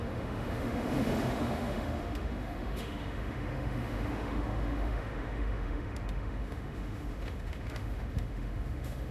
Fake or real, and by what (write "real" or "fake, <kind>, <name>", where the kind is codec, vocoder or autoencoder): fake, autoencoder, DAC-VAE